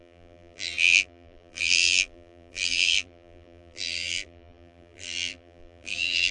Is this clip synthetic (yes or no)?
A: yes